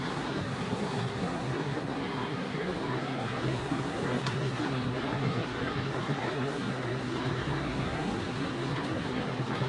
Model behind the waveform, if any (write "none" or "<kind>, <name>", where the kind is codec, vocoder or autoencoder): codec, SNAC